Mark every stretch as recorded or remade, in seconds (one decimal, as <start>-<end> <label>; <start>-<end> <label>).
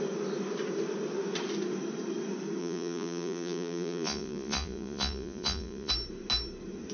0.0-2.6 recorded; 2.6-5.9 remade; 5.9-6.9 recorded